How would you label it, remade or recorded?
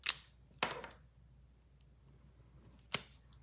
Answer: recorded